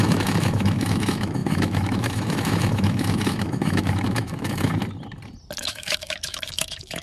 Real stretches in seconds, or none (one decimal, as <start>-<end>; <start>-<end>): 4.8-5.6